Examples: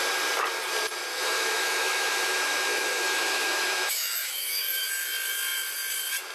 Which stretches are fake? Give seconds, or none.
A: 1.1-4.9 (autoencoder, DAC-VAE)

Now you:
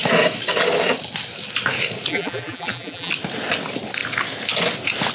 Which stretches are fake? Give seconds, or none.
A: 2.1-3.1 (vocoder, BigVGAN v2)

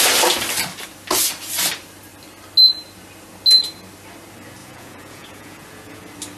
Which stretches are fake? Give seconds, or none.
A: 4.6-6.0 (vocoder, Vocos)

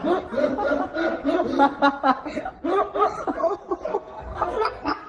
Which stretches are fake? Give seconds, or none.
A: 3.9-5.1 (codec, SNAC)